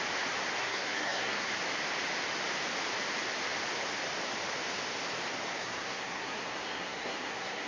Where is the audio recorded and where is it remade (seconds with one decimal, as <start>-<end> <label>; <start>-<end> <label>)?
0.0-0.6 recorded; 0.6-1.5 remade; 1.5-5.6 recorded; 5.6-7.7 remade